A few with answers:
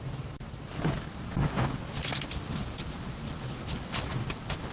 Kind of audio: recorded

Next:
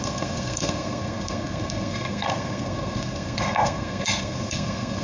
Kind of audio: remade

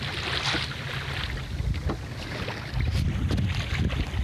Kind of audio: recorded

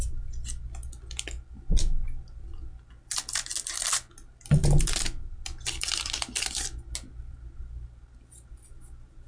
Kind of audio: recorded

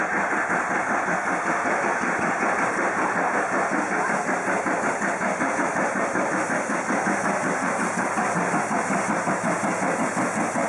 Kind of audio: recorded